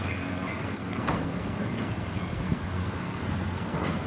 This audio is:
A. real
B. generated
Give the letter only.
B